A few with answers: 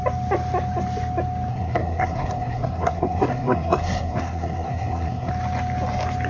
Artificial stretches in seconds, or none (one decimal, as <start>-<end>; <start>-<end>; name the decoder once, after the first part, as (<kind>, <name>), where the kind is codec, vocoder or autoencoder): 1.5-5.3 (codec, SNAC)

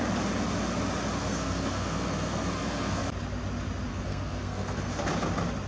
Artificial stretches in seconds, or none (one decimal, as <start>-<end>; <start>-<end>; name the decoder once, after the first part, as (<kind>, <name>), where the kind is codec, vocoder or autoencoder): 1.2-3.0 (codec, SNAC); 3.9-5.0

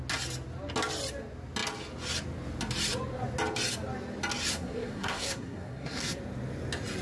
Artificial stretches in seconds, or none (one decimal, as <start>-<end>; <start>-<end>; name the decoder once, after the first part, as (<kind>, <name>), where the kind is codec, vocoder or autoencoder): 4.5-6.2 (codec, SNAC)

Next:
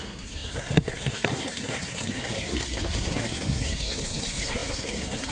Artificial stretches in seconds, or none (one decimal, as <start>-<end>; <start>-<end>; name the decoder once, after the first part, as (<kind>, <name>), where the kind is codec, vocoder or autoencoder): 0.0-5.3 (codec, SNAC)

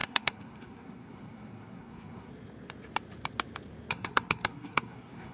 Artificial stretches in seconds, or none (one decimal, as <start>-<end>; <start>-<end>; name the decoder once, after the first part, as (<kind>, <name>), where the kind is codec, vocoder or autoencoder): 0.0-2.3 (codec, SNAC); 3.9-5.3

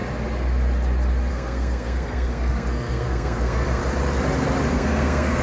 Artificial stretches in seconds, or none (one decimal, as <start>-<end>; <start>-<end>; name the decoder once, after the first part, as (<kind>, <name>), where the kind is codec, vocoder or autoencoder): 1.3-3.8 (codec, SNAC); 4.7-5.4

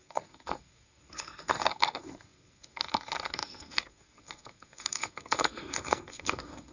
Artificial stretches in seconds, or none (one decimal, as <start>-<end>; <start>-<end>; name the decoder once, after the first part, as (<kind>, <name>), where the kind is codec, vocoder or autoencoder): 0.0-6.7 (codec, SNAC)

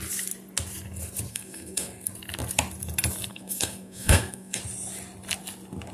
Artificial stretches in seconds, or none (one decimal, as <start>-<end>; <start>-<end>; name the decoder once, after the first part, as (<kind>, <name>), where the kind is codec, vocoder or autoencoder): 1.3-2.1 (codec, SNAC); 3.3-4.6